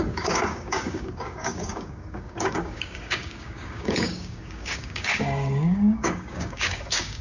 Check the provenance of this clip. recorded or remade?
remade